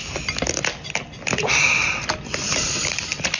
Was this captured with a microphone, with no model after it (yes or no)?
yes